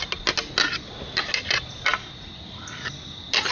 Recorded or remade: recorded